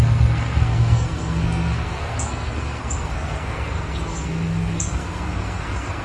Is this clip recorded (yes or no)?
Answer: no